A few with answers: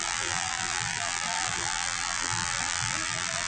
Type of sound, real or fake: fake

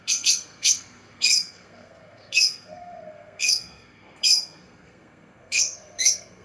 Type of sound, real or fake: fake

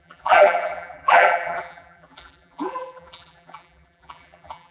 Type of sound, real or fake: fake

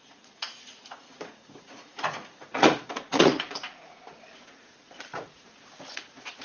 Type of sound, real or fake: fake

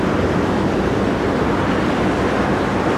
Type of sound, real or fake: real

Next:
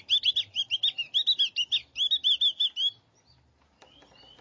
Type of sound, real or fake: real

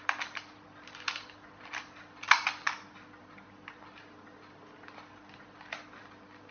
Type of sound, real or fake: real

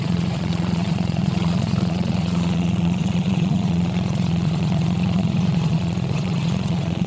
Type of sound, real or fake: fake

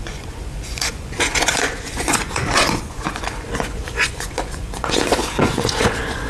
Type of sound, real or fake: fake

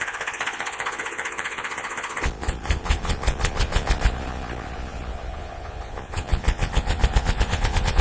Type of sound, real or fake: fake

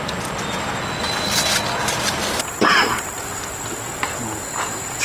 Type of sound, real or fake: real